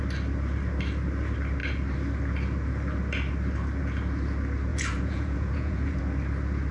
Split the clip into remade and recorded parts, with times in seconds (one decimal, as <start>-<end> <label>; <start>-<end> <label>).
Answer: 0.0-4.7 recorded; 4.7-6.0 remade; 6.0-6.7 recorded